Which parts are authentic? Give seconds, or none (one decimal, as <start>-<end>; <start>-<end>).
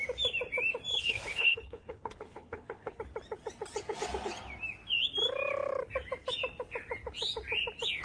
0.0-0.9; 3.0-8.0